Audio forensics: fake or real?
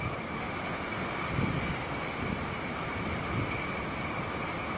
real